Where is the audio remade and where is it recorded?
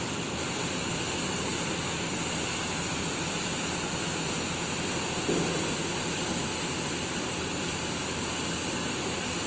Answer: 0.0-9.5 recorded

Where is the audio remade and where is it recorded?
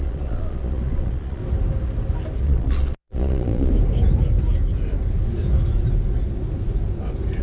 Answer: 0.0-1.4 remade; 1.4-2.4 recorded; 2.4-3.7 remade; 3.7-7.4 recorded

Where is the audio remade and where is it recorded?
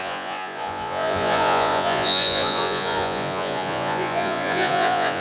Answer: 0.0-5.2 remade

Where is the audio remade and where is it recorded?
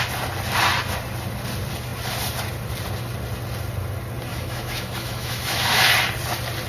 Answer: 0.0-4.3 recorded; 4.3-5.9 remade; 5.9-6.7 recorded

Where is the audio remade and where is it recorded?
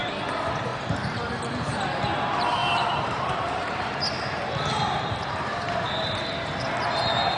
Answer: 0.0-2.6 recorded; 2.6-4.0 remade; 4.0-5.2 recorded; 5.2-5.9 remade; 5.9-7.4 recorded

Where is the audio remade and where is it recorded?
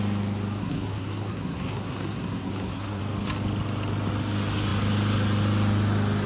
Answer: 0.0-0.6 recorded; 0.6-3.0 remade; 3.0-6.3 recorded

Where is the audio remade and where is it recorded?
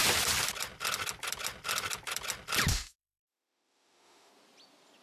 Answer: 0.0-2.7 recorded; 2.7-4.3 remade; 4.3-5.0 recorded